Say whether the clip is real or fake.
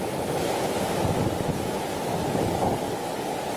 real